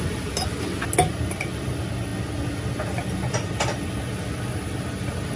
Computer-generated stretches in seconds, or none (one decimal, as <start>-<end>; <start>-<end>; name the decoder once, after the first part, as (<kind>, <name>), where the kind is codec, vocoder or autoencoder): none